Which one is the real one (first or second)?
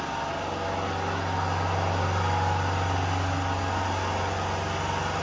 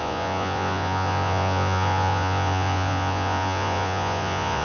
first